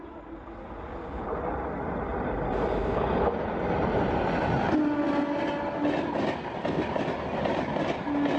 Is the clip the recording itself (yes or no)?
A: yes